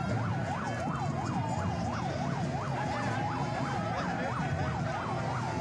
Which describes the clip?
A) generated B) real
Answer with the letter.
B